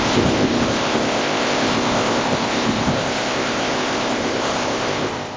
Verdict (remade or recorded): remade